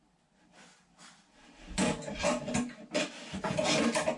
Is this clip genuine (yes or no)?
yes